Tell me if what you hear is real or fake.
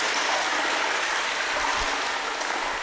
real